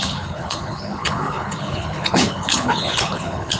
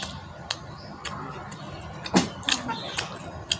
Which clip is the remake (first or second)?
first